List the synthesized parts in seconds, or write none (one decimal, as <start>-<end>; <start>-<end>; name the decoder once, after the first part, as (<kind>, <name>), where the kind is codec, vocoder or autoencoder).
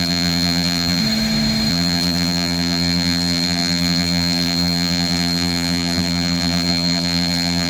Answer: 0.0-1.0 (vocoder, BigVGAN v2); 1.7-7.7